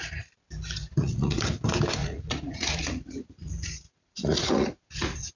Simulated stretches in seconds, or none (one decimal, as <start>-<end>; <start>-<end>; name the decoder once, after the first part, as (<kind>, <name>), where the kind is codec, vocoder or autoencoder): 0.8-1.3 (vocoder, Vocos); 2.0-5.3